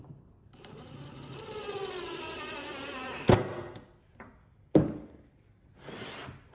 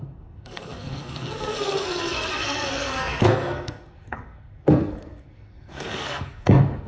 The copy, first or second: second